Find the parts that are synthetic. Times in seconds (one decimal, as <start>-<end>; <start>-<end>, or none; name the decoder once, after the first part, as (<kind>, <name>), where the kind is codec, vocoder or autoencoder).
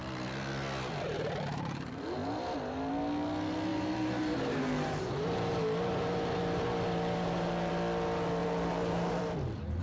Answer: 3.7-7.7 (vocoder, BigVGAN v2); 8.4-9.2